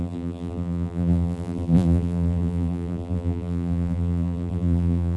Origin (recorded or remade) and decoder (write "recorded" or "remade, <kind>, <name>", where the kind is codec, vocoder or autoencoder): remade, vocoder, BigVGAN v2